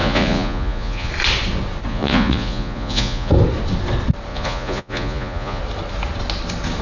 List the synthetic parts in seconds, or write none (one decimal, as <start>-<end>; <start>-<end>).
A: 0.0-1.1; 1.9-3.3; 4.3-5.6